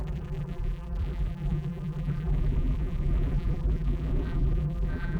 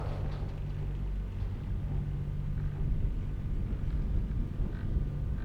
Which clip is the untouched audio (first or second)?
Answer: second